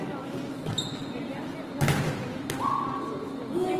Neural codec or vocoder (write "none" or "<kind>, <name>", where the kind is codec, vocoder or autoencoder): none